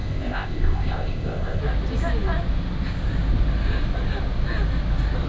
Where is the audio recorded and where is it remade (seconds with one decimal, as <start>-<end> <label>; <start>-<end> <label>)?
0.0-1.6 remade; 1.6-5.3 recorded